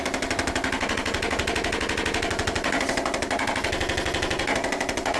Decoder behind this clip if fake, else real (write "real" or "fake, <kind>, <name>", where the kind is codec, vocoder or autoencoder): real